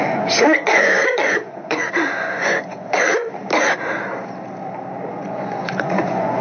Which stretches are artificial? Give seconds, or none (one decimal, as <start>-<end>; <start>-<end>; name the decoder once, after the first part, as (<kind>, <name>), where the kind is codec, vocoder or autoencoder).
0.0-3.1 (vocoder, Vocos); 5.1-6.4